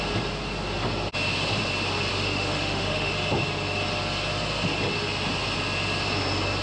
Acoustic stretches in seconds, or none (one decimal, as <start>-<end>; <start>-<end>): 0.0-2.1; 3.1-6.6